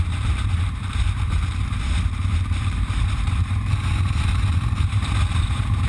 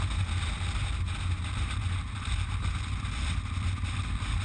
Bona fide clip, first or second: second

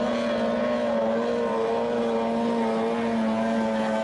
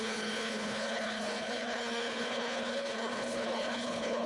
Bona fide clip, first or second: first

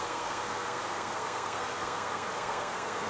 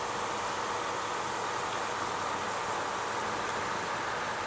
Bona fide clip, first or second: second